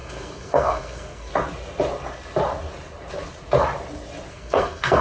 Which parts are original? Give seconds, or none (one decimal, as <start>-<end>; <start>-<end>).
1.3-4.3